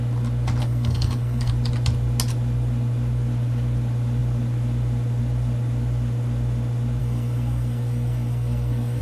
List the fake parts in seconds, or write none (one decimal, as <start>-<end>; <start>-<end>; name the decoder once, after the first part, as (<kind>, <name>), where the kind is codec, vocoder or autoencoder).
0.6-1.5 (codec, SNAC); 7.0-9.0